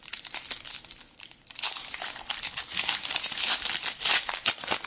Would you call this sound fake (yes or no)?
yes